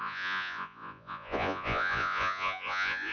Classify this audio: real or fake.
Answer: fake